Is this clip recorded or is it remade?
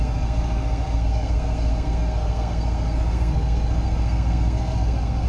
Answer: remade